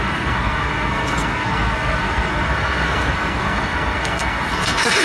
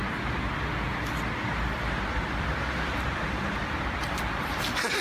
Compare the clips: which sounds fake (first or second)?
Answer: first